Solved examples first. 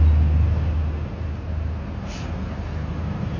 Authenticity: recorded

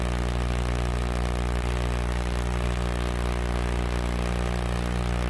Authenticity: recorded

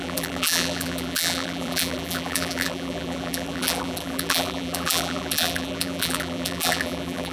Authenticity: remade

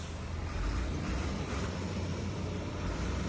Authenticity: remade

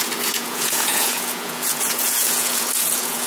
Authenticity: remade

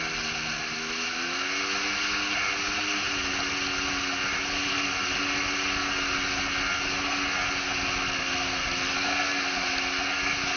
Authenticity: recorded